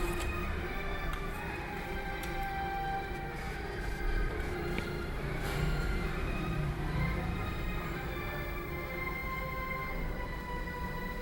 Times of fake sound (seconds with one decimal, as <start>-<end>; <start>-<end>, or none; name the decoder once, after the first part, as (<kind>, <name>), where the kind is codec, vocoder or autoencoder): 0.0-11.2 (vocoder, BigVGAN v2)